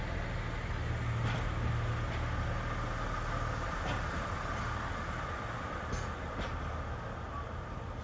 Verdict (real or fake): real